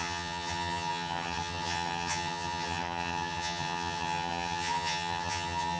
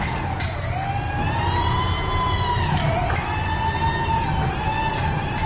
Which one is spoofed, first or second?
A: first